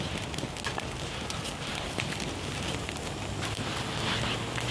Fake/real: real